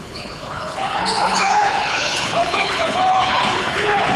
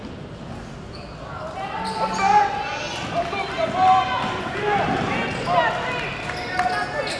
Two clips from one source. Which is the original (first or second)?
second